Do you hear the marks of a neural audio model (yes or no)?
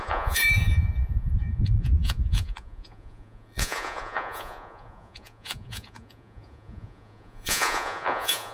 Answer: yes